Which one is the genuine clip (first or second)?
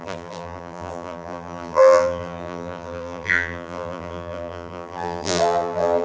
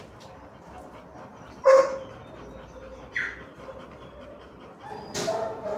second